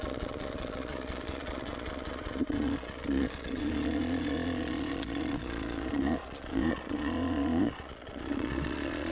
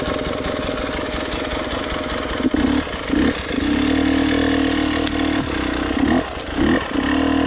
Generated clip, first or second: first